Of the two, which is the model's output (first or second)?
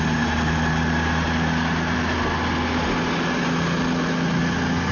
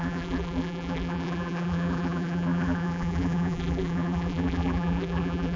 second